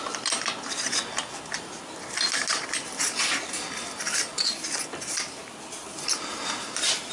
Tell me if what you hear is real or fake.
real